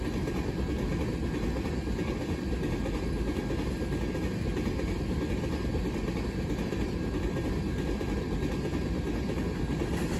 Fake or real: real